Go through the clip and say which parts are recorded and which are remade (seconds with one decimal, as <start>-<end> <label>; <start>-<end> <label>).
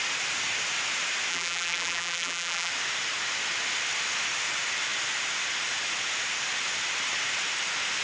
0.0-1.3 recorded; 1.3-2.7 remade; 2.7-8.0 recorded